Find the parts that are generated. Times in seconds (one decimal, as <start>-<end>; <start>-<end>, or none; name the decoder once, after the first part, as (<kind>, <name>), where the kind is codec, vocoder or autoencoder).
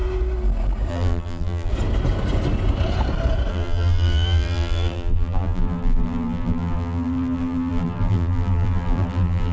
0.9-1.7 (vocoder, BigVGAN v2); 3.5-9.5